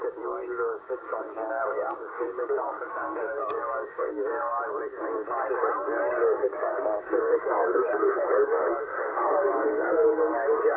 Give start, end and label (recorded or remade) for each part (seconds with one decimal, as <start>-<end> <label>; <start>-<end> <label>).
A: 0.0-4.5 remade; 4.5-6.4 recorded; 6.4-10.8 remade